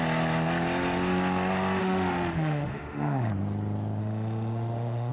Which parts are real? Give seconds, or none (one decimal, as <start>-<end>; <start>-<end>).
0.0-1.8; 3.3-4.0